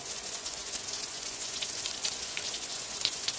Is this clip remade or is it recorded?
remade